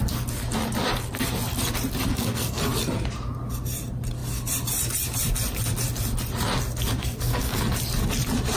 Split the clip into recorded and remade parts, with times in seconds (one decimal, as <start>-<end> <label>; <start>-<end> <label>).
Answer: 0.0-2.1 recorded; 2.1-2.6 remade; 2.6-7.0 recorded; 7.0-7.6 remade; 7.6-8.6 recorded